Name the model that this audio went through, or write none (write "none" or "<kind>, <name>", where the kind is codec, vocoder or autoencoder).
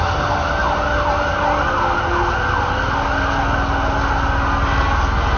none